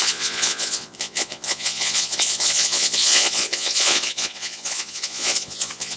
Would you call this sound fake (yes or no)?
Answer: yes